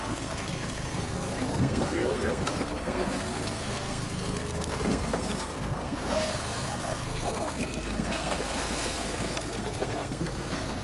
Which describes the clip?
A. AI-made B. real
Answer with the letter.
A